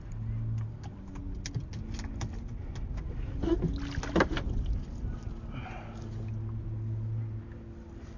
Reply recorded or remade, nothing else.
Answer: recorded